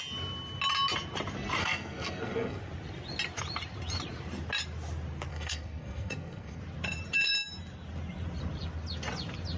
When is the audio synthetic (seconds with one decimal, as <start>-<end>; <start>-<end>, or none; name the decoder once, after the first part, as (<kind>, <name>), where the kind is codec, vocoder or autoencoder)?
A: 1.6-2.6 (codec, SNAC); 5.3-6.6